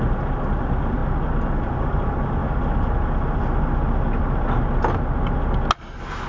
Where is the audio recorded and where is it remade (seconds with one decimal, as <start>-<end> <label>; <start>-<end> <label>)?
0.0-1.0 remade; 1.0-1.7 recorded; 1.7-2.4 remade; 2.4-6.3 recorded